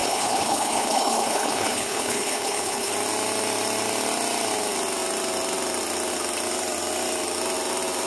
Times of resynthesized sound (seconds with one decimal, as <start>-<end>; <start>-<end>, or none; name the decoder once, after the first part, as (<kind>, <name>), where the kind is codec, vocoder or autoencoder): 0.0-2.9 (codec, HILCodec)